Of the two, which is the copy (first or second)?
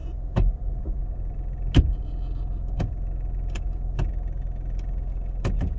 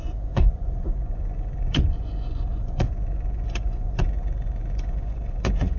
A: second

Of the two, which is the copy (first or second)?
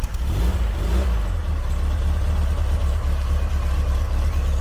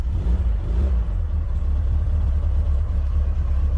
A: second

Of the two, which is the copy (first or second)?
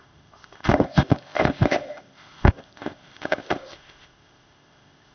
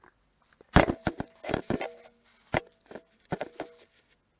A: first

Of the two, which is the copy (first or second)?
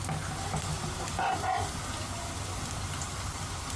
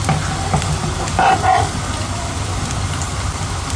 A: second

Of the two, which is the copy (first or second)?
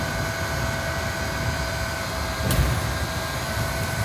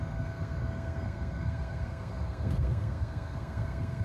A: second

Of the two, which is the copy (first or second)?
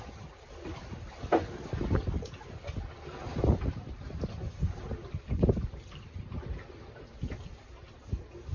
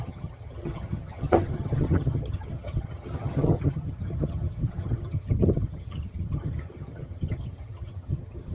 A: second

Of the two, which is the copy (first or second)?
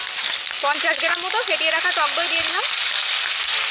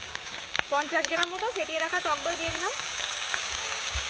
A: second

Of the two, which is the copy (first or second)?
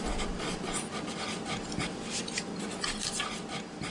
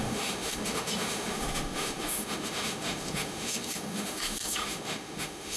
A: second